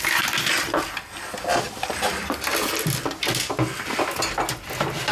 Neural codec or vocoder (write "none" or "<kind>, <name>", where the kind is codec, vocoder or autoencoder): none